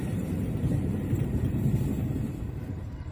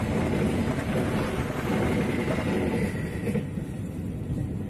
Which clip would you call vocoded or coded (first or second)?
first